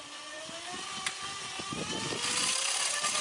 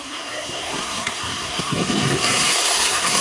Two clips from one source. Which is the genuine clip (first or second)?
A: first